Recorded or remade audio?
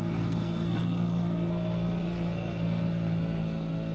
remade